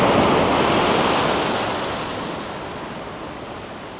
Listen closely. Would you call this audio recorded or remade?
recorded